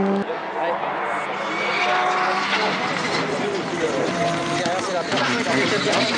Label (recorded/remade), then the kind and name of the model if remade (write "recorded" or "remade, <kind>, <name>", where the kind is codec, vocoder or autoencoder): recorded